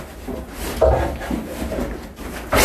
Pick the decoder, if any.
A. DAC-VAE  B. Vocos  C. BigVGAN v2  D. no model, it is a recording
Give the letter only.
D